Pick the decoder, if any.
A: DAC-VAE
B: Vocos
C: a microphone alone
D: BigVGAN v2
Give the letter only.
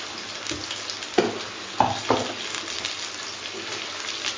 C